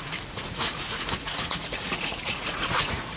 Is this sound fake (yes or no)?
yes